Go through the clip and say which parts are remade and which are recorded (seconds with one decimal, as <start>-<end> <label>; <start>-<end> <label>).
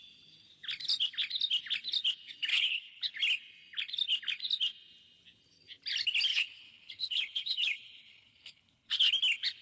0.0-2.5 recorded; 2.5-3.2 remade; 3.2-6.3 recorded; 6.3-9.1 remade; 9.1-9.6 recorded